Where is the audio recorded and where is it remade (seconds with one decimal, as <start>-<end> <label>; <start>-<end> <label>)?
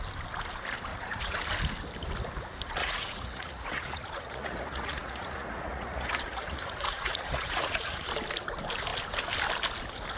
0.0-0.9 recorded; 0.9-1.4 remade; 1.4-2.8 recorded; 2.8-8.1 remade; 8.1-10.2 recorded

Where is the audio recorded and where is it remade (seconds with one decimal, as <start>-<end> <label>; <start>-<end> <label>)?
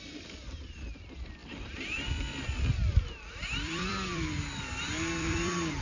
0.0-5.8 remade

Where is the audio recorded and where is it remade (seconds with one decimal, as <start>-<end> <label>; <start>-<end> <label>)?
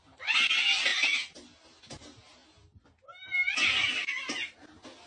0.0-5.1 recorded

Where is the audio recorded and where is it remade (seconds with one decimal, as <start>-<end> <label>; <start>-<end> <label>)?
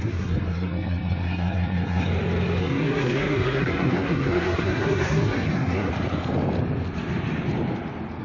0.0-2.1 remade; 2.1-2.6 recorded; 2.6-5.9 remade; 5.9-8.2 recorded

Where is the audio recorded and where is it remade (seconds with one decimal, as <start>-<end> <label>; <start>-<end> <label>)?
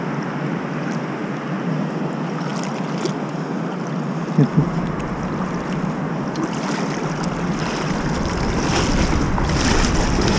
0.0-10.4 recorded